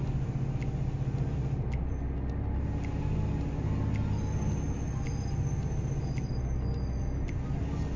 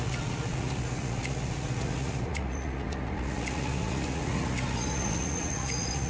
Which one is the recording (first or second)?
first